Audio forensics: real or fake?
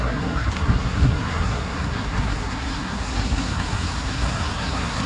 fake